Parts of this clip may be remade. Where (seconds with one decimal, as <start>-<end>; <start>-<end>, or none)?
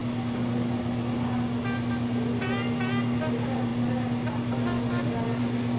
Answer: none